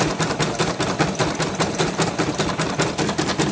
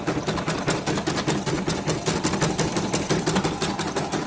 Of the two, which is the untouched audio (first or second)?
second